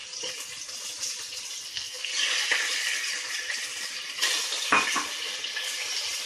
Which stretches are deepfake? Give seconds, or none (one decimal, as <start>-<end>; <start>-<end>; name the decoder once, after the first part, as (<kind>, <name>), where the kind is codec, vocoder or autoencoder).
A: 1.7-2.1 (codec, SNAC)